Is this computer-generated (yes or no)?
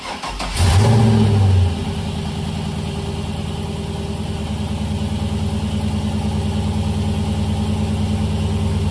no